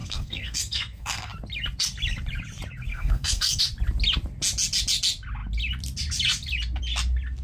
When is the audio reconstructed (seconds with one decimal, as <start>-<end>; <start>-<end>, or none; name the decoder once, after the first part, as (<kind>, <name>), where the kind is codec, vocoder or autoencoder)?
0.0-1.3 (codec, SNAC); 2.9-3.6